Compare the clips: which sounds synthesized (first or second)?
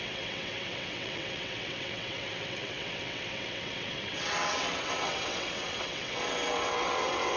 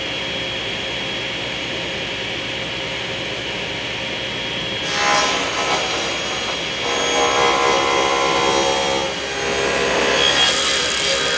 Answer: first